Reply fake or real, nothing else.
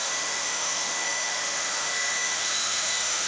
fake